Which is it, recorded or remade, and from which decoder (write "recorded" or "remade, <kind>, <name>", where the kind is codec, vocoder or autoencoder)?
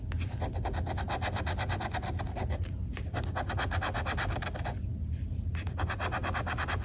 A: recorded